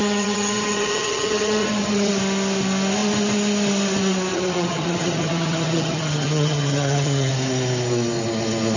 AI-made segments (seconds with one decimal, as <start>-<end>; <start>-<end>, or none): 0.0-2.1; 4.3-7.3